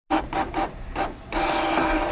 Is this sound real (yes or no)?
yes